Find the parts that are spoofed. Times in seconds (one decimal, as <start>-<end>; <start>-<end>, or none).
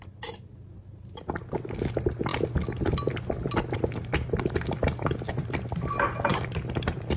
0.9-1.8; 6.3-7.2